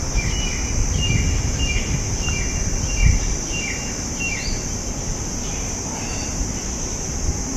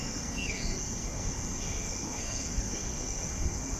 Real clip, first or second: first